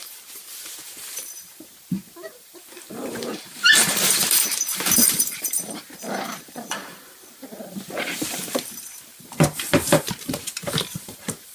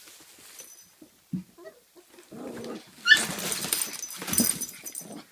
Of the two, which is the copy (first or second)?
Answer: first